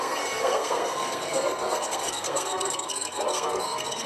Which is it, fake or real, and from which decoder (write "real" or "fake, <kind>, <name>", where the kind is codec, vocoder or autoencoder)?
fake, codec, SNAC